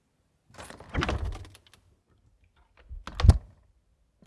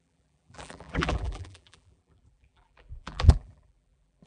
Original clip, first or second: first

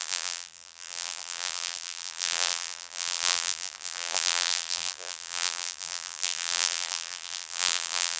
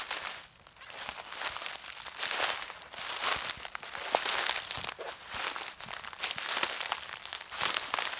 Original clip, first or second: second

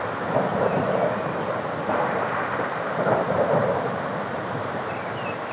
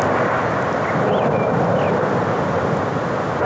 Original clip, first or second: second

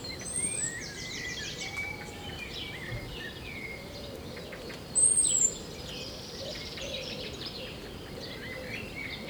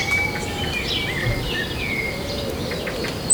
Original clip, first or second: second